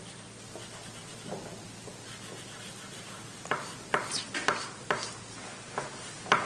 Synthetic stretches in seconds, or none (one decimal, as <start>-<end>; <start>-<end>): none